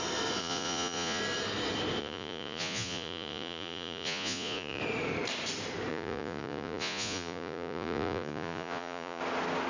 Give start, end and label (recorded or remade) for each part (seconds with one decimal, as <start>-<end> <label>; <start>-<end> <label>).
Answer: 0.0-0.4 recorded; 0.4-1.2 remade; 1.2-2.0 recorded; 2.0-4.8 remade; 4.8-5.9 recorded; 5.9-9.2 remade; 9.2-9.7 recorded

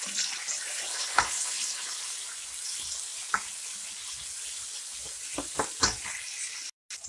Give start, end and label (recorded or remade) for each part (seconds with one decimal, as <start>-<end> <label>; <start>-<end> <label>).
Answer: 0.0-0.9 recorded; 0.9-2.0 remade; 2.0-7.1 recorded

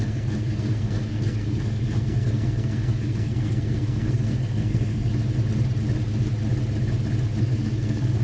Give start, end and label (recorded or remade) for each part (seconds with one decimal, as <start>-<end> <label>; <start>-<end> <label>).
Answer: 0.0-5.1 remade; 5.1-7.4 recorded; 7.4-8.2 remade

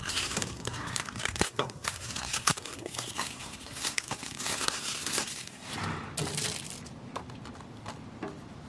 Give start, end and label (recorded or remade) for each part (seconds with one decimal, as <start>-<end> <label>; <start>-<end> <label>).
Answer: 0.0-5.7 remade; 5.7-8.7 recorded

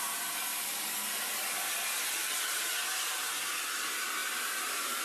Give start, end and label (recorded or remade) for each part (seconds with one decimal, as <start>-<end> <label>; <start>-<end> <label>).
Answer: 0.0-0.5 recorded; 0.5-3.5 remade; 3.5-4.2 recorded; 4.2-5.0 remade